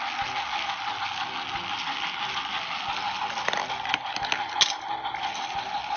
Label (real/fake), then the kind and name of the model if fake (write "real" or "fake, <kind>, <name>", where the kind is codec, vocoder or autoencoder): real